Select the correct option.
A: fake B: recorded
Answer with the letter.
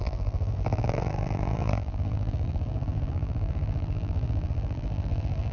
A